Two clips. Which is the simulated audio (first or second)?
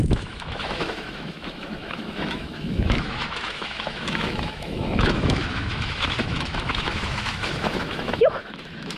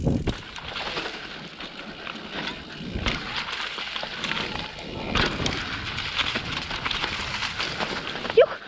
first